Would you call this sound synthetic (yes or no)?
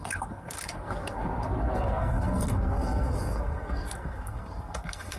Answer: yes